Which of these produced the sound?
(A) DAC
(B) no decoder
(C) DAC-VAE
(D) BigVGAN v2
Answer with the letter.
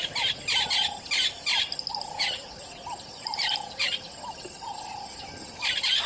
B